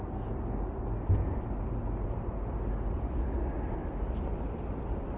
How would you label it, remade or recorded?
recorded